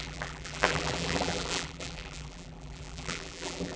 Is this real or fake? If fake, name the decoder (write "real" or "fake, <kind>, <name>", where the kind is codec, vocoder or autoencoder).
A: fake, vocoder, BigVGAN v2